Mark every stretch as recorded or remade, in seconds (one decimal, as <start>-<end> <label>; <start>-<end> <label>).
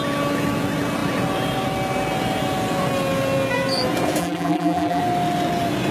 0.0-4.2 recorded; 4.2-5.0 remade; 5.0-5.9 recorded